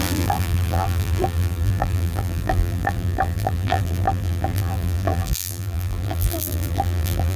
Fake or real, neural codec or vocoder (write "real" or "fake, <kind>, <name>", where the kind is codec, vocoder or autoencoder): fake, vocoder, BigVGAN v2